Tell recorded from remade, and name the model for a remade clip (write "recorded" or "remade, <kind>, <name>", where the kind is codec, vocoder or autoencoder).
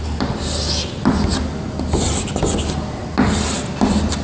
recorded